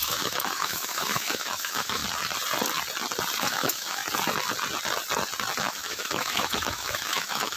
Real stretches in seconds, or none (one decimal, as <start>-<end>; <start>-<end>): 2.0-3.4; 4.0-5.6